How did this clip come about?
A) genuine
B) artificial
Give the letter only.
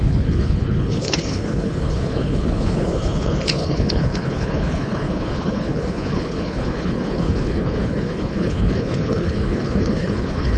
B